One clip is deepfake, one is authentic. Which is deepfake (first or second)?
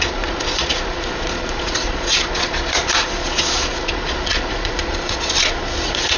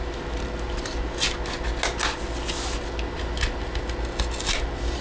first